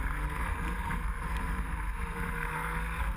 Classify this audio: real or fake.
fake